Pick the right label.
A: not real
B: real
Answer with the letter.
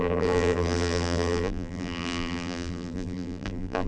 A